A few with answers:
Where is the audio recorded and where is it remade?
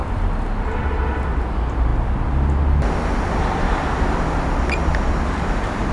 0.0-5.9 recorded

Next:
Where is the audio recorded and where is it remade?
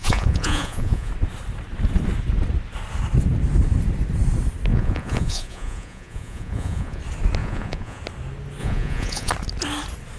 0.0-1.1 remade; 1.1-4.7 recorded; 4.7-7.0 remade; 7.0-7.4 recorded; 7.4-8.0 remade; 8.0-8.6 recorded; 8.6-9.3 remade; 9.3-10.2 recorded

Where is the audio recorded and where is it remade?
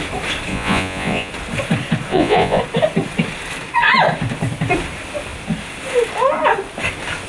0.0-0.5 recorded; 0.5-1.3 remade; 1.3-2.1 recorded; 2.1-2.6 remade; 2.6-7.3 recorded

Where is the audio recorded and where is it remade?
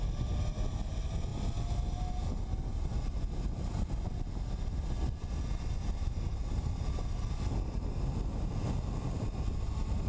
0.0-10.1 recorded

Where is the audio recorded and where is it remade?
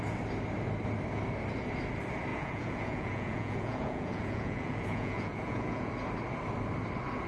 0.0-2.3 recorded; 2.3-5.9 remade; 5.9-7.3 recorded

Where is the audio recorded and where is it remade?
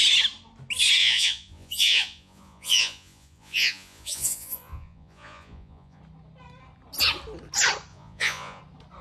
0.0-1.0 recorded; 1.0-6.0 remade; 6.0-7.9 recorded; 7.9-8.6 remade; 8.6-9.0 recorded